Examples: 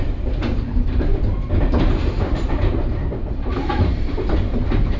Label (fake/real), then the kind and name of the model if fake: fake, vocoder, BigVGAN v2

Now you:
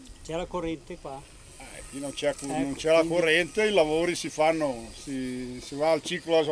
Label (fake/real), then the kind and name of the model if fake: real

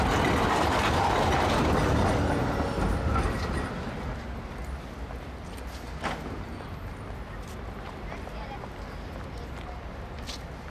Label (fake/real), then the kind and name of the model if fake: real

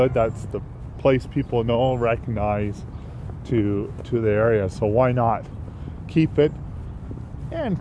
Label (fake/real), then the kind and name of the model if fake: real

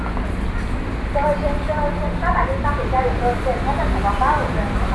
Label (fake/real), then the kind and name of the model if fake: real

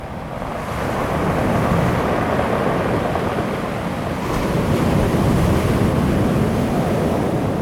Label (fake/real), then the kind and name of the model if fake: real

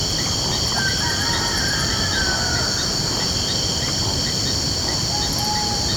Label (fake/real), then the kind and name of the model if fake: real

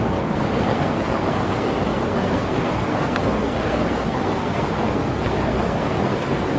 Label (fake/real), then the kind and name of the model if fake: fake, codec, SNAC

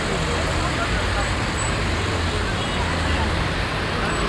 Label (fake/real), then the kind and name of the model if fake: real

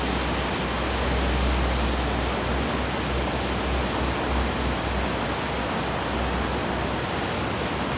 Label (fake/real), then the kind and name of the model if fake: real